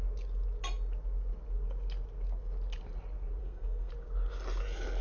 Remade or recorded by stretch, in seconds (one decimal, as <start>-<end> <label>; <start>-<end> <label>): 0.0-3.4 recorded; 3.4-3.9 remade; 3.9-5.0 recorded